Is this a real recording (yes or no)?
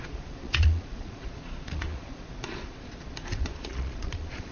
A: no